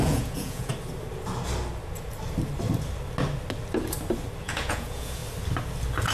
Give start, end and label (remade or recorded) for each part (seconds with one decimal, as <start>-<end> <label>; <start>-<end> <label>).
0.0-0.7 remade; 0.7-4.4 recorded; 4.4-5.2 remade; 5.2-6.1 recorded